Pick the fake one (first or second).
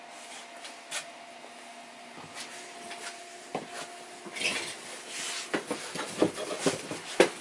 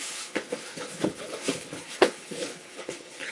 second